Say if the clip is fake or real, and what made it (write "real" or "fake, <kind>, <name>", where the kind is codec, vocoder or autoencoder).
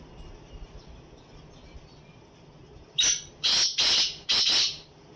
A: real